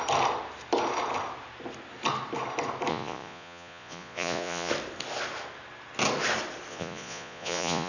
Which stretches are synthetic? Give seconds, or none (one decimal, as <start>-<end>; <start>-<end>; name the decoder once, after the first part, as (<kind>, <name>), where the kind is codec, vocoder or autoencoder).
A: 2.9-4.7 (vocoder, Vocos); 6.7-7.9